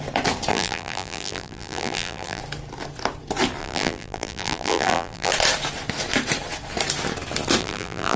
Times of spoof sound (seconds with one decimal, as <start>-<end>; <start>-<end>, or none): 0.5-2.4; 3.6-5.3; 7.6-8.2